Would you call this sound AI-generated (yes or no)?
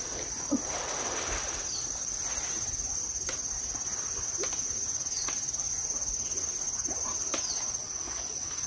no